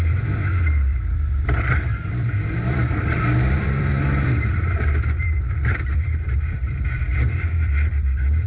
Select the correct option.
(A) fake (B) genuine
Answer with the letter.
A